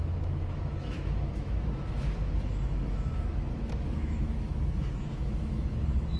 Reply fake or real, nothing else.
fake